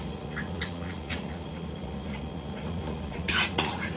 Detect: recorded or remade remade